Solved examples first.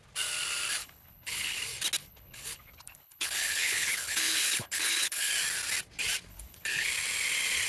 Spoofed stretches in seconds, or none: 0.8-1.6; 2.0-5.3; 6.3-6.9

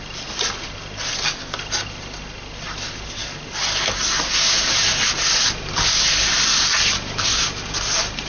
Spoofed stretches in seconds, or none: none

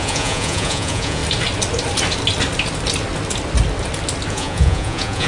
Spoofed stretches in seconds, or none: 0.0-1.2; 4.3-5.3

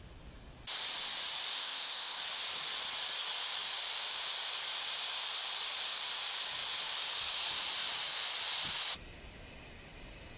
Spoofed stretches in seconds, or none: 1.5-2.2

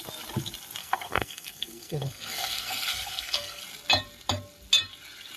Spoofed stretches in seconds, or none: 0.8-3.6

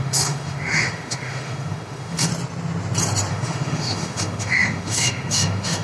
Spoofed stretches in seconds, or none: 0.0-2.3; 3.3-5.8

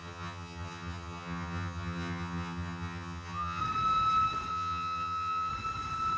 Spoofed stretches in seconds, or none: 0.0-3.6; 4.5-5.5

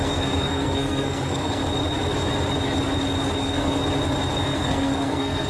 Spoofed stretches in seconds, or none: 0.0-1.6; 3.4-3.8; 4.4-5.5